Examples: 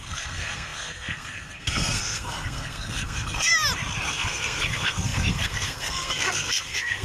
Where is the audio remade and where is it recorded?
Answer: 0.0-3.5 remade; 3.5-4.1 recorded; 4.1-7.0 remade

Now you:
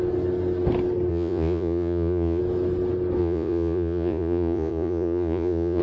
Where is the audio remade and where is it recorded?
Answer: 0.0-1.1 recorded; 1.1-2.4 remade; 2.4-3.2 recorded; 3.2-5.8 remade

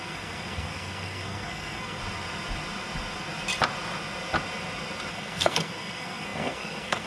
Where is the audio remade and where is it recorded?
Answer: 0.0-2.0 remade; 2.0-5.1 recorded; 5.1-7.1 remade

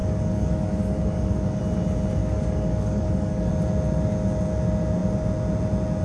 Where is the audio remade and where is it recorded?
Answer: 0.0-1.6 remade; 1.6-2.2 recorded; 2.2-3.5 remade; 3.5-6.0 recorded

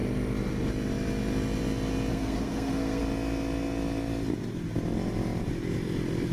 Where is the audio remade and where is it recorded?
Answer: 0.0-2.1 recorded; 2.1-3.0 remade; 3.0-6.3 recorded

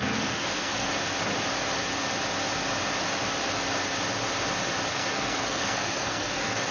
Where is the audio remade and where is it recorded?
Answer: 0.0-0.9 remade; 0.9-4.9 recorded; 4.9-6.7 remade